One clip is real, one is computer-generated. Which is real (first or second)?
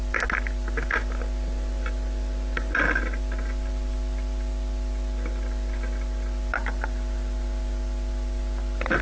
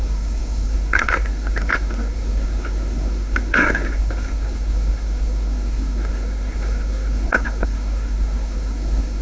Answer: first